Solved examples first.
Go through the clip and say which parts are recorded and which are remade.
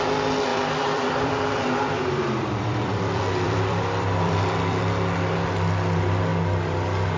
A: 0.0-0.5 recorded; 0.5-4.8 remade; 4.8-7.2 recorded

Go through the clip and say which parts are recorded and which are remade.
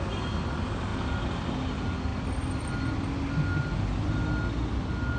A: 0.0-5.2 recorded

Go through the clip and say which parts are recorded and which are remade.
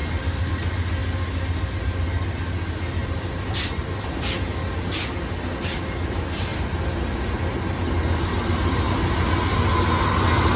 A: 0.0-0.5 remade; 0.5-3.0 recorded; 3.0-4.2 remade; 4.2-10.6 recorded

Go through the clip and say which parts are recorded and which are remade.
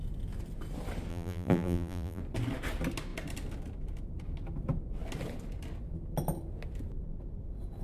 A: 0.0-1.1 recorded; 1.1-2.2 remade; 2.2-7.8 recorded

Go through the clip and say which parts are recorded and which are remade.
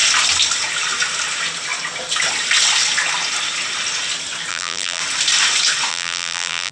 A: 0.0-4.5 recorded; 4.5-5.0 remade; 5.0-5.9 recorded; 5.9-6.7 remade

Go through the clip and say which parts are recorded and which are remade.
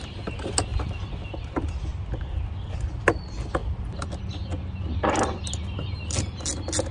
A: 0.0-1.9 recorded; 1.9-2.4 remade; 2.4-3.6 recorded; 3.6-4.2 remade; 4.2-6.9 recorded